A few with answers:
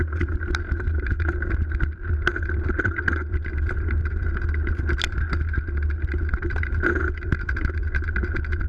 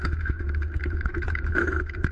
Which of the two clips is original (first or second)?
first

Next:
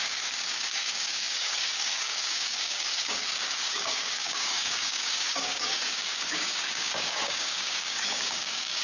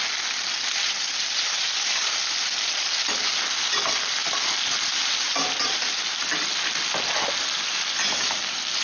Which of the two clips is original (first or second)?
second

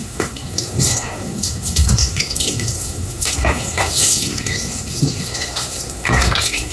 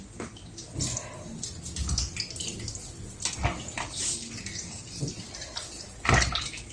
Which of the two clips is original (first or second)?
second